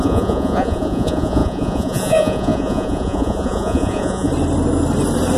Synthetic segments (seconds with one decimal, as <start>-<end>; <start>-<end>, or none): 0.0-4.3